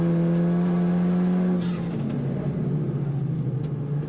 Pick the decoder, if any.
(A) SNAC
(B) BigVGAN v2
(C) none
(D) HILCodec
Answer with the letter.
C